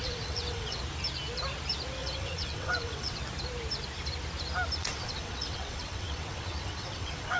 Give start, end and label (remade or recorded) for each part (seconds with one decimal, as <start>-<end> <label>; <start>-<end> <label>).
0.0-0.8 remade; 0.8-2.0 recorded; 2.0-3.2 remade; 3.2-4.8 recorded; 4.8-7.4 remade